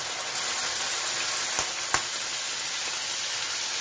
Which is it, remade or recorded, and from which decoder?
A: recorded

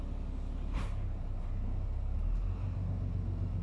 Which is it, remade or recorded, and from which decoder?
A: recorded